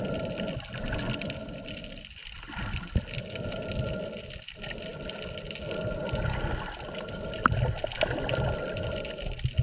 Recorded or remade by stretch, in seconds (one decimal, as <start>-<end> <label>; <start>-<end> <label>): 0.0-9.6 recorded